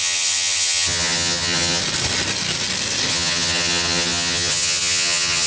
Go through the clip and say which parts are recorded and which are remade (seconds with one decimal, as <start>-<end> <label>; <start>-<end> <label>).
0.0-1.8 remade; 1.8-3.1 recorded; 3.1-5.5 remade